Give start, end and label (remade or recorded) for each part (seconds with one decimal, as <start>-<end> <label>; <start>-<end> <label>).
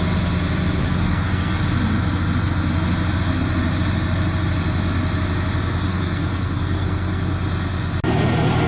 0.0-0.8 recorded; 0.8-1.6 remade; 1.6-5.9 recorded; 5.9-7.3 remade; 7.3-8.7 recorded